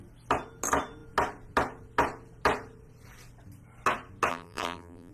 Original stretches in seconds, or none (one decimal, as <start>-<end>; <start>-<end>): 0.0-4.3